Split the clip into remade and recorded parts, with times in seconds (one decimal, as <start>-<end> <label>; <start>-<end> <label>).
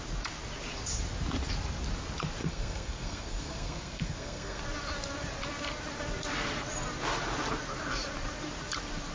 0.0-2.4 recorded; 2.4-4.6 remade; 4.6-9.1 recorded